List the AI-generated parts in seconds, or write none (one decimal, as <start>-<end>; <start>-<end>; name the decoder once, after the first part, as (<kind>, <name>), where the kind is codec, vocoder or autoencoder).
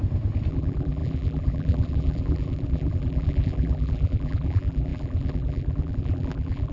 0.5-6.7 (vocoder, BigVGAN v2)